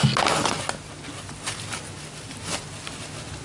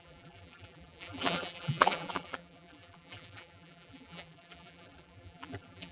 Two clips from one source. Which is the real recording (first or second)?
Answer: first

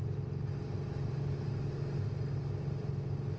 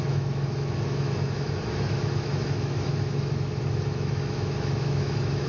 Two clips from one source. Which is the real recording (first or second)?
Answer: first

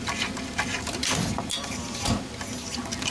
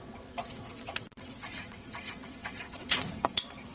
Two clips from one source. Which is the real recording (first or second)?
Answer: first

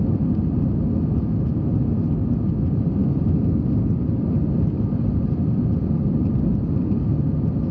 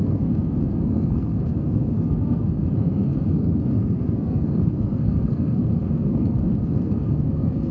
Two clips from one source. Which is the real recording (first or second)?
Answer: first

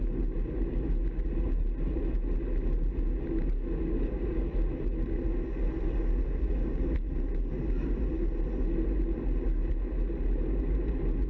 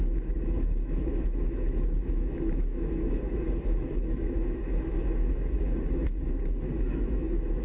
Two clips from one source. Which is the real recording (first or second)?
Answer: first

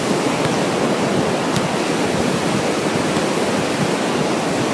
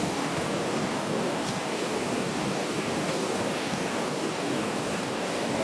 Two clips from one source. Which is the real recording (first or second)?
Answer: first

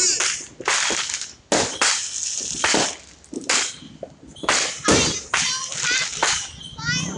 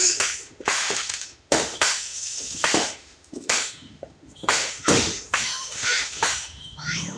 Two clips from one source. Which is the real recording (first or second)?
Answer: first